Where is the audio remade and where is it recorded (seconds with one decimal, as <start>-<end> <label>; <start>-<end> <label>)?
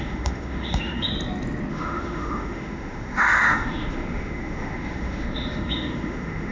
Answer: 0.0-1.1 remade; 1.1-1.7 recorded; 1.7-6.5 remade